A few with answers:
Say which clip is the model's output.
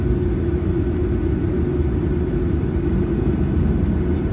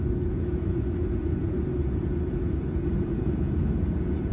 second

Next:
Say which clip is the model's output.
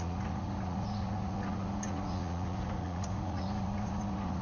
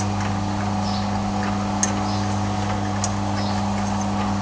first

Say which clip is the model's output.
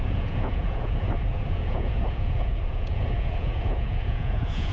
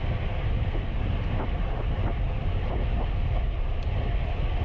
first